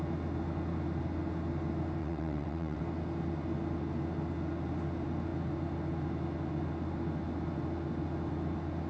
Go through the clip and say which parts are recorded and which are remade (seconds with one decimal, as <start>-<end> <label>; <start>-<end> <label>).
0.0-2.0 recorded; 2.0-2.8 remade; 2.8-8.9 recorded